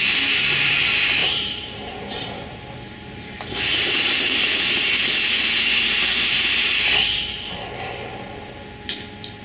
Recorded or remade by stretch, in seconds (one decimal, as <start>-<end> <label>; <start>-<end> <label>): 0.0-1.2 recorded; 1.2-4.6 remade; 4.6-6.1 recorded; 6.1-7.1 remade; 7.1-9.4 recorded